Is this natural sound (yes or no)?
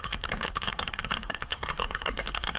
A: no